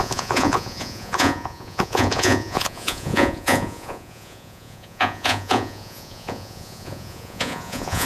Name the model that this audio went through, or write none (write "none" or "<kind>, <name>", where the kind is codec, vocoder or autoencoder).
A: vocoder, Vocos